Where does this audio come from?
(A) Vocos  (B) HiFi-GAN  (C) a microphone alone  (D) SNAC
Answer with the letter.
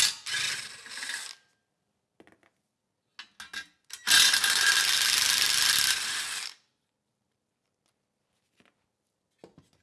C